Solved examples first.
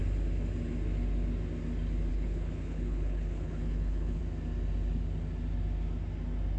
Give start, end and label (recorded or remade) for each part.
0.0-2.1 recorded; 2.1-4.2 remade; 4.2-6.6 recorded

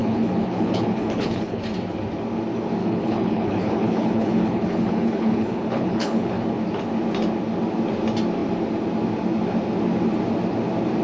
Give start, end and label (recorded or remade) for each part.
0.0-1.6 remade; 1.6-2.8 recorded; 2.8-6.4 remade; 6.4-11.0 recorded

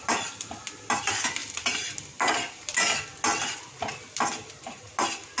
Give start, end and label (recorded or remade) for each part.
0.0-5.4 recorded

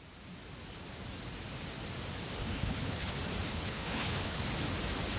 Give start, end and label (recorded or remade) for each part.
0.0-2.4 recorded; 2.4-3.1 remade; 3.1-3.5 recorded; 3.5-4.4 remade; 4.4-5.2 recorded

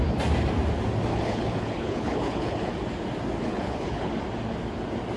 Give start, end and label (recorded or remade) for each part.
0.0-1.1 recorded; 1.1-2.7 remade; 2.7-3.4 recorded; 3.4-4.1 remade; 4.1-5.2 recorded

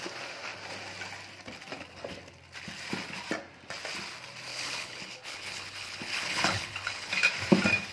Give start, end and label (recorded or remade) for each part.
0.0-4.5 recorded; 4.5-7.1 remade; 7.1-7.9 recorded

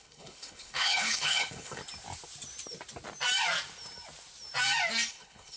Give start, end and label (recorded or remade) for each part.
0.0-1.8 remade; 1.8-5.1 recorded; 5.1-5.6 remade